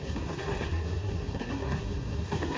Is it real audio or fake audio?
fake